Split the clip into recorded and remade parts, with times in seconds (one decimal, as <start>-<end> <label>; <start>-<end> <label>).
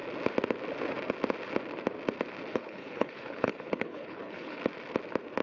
0.0-2.5 recorded; 2.5-4.6 remade; 4.6-5.4 recorded